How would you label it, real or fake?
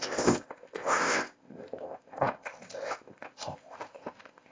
fake